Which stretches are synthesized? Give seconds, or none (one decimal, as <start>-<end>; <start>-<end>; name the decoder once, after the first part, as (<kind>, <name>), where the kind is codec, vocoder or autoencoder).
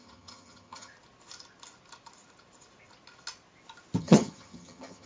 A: 0.0-0.9 (vocoder, HiFi-GAN); 4.0-5.1